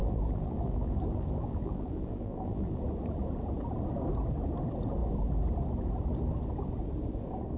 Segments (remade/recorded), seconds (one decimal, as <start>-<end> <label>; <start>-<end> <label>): 0.0-2.8 remade; 2.8-7.6 recorded